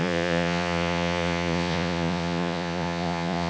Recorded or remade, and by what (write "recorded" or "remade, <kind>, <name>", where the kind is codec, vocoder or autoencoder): remade, vocoder, Vocos